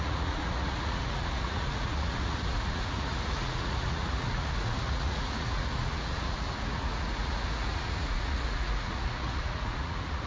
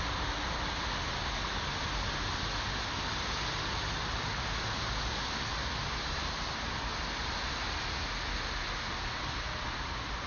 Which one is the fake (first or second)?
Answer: first